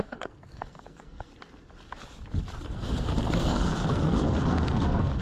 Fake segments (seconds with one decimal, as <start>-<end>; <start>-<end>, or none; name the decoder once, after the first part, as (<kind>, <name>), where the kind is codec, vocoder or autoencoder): 0.0-1.3 (codec, SNAC); 2.6-5.2